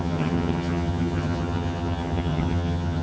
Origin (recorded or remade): remade